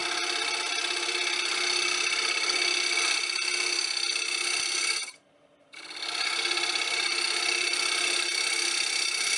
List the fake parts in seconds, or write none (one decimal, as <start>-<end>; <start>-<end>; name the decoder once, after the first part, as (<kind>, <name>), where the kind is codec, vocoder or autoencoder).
none